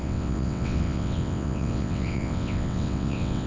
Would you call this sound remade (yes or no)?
yes